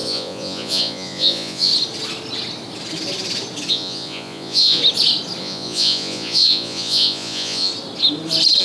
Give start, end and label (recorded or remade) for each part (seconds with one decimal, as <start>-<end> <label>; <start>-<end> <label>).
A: 0.0-1.7 remade; 1.7-3.7 recorded; 3.7-4.8 remade; 4.8-5.4 recorded; 5.4-7.7 remade; 7.7-8.6 recorded